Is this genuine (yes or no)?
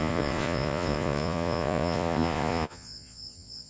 no